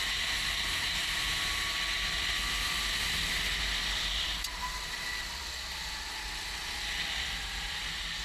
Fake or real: real